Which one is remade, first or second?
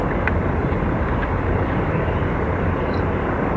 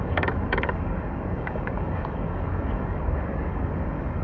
second